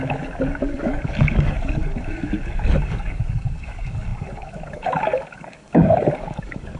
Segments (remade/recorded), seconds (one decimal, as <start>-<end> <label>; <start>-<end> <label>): 0.0-6.8 remade